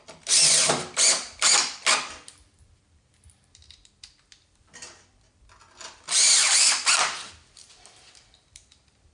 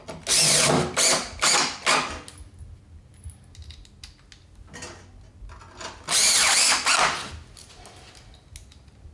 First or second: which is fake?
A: first